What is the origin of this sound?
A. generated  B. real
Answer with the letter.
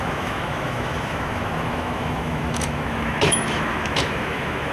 A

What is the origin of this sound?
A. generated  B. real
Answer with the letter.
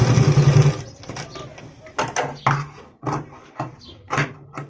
B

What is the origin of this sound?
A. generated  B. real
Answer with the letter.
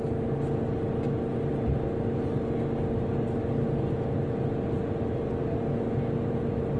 B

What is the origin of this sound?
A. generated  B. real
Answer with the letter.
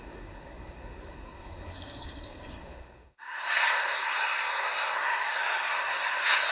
A